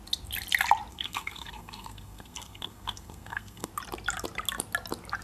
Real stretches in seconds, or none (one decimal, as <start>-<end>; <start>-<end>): 0.0-0.9; 3.7-5.2